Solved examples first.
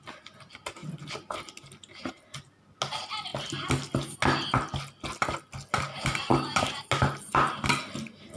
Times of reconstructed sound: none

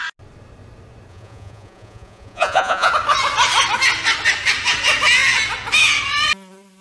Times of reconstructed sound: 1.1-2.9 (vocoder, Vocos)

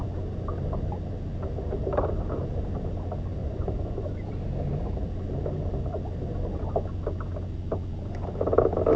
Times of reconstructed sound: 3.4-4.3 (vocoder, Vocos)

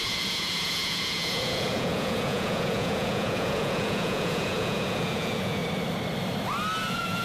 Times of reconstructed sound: 0.0-5.6 (vocoder, Vocos); 6.8-7.2

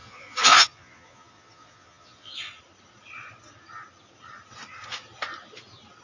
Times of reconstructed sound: 0.0-2.6 (vocoder, Vocos)